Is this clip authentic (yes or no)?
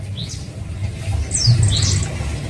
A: yes